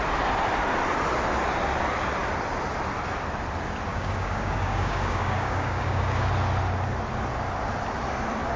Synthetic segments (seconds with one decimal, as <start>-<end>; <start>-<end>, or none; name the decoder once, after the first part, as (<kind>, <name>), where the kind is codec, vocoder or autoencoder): 3.9-6.3 (codec, DAC)